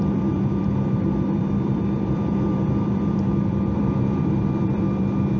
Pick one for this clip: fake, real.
fake